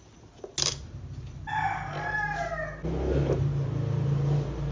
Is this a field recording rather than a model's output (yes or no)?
yes